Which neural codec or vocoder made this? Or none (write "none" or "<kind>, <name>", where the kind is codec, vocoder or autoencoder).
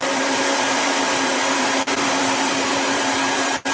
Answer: vocoder, BigVGAN v2